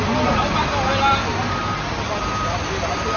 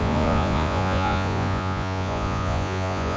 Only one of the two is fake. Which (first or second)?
second